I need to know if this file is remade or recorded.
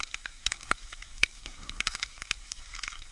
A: remade